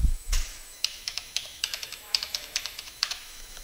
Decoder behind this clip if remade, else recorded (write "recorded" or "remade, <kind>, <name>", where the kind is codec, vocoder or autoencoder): remade, autoencoder, DAC-VAE